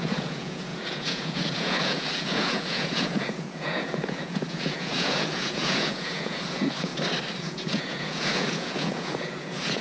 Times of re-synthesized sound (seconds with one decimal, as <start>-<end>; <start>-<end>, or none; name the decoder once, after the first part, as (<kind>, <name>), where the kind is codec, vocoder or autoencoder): 0.0-6.9 (vocoder, Vocos); 7.4-9.8